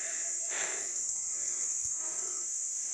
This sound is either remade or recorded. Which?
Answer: remade